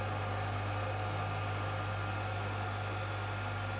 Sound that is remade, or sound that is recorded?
recorded